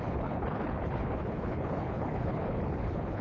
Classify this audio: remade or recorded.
remade